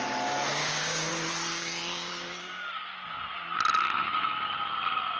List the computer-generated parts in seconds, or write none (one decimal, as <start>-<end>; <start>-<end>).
0.6-1.1; 1.5-3.2

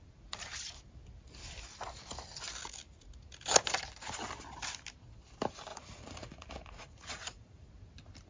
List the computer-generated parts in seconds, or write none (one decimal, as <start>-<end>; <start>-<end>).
5.7-7.7